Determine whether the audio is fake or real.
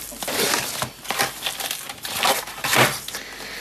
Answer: real